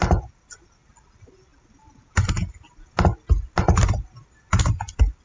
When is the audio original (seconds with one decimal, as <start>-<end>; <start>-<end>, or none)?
0.0-5.2